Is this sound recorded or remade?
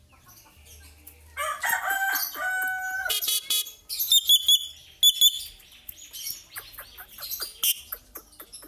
recorded